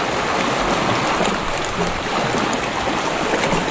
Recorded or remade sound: recorded